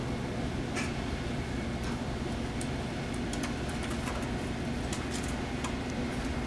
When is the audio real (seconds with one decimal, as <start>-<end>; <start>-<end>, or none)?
0.0-6.5